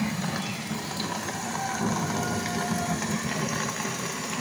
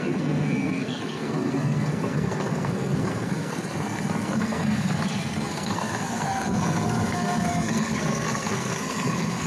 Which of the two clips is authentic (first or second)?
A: first